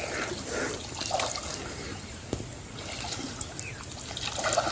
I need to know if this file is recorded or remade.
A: recorded